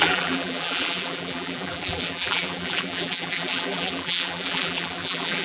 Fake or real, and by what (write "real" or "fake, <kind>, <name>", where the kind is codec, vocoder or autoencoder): fake, vocoder, BigVGAN v2